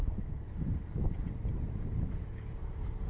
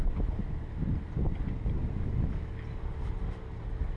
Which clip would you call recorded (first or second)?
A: second